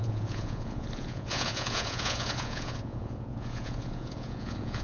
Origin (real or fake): fake